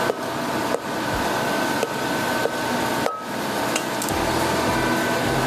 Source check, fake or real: real